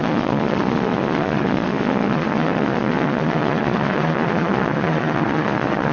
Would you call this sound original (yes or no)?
no